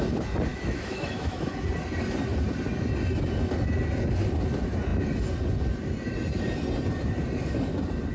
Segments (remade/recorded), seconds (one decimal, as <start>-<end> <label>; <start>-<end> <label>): 0.0-0.5 recorded; 0.5-1.5 remade; 1.5-8.1 recorded